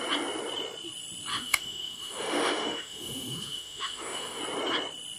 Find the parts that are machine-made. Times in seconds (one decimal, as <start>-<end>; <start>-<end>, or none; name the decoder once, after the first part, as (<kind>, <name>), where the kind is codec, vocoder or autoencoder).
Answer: 1.3-4.4 (autoencoder, DAC-VAE)